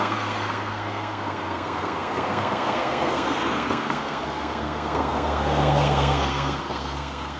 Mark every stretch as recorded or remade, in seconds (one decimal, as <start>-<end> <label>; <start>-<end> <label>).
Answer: 0.0-7.4 remade